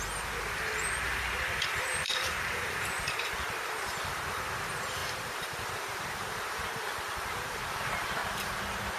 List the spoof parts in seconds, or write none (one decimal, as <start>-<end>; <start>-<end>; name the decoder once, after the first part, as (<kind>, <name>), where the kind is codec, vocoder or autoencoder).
0.0-8.2 (vocoder, BigVGAN v2)